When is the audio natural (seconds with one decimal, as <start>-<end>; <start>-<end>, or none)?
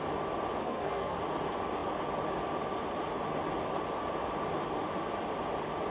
0.0-0.6; 1.2-5.9